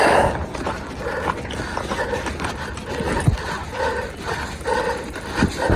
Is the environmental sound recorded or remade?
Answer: recorded